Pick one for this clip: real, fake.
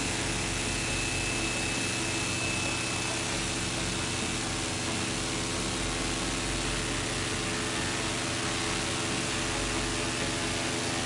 real